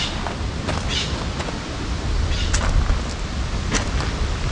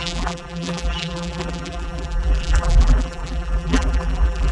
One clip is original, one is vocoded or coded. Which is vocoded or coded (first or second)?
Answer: second